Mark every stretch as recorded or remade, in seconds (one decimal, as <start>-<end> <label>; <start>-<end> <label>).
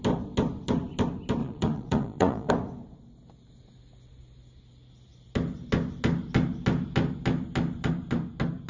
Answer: 0.0-1.4 recorded; 1.4-2.5 remade; 2.5-8.7 recorded